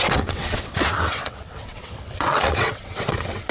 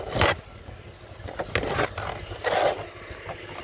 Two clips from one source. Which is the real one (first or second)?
second